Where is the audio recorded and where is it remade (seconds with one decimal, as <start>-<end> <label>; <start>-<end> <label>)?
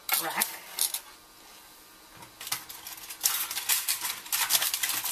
0.0-5.1 recorded